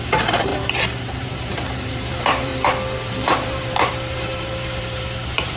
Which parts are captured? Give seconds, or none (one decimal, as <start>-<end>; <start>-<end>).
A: 2.5-3.1